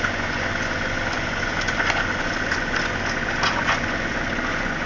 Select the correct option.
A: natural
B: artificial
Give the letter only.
B